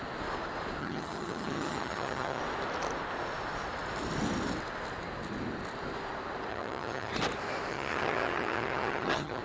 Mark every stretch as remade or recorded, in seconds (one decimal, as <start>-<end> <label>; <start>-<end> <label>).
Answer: 0.0-0.8 recorded; 0.8-2.4 remade; 2.4-6.5 recorded; 6.5-7.1 remade; 7.1-7.7 recorded; 7.7-9.4 remade